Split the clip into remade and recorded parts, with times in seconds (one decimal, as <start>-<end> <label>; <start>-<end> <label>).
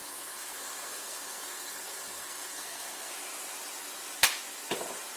0.0-3.1 remade; 3.1-5.2 recorded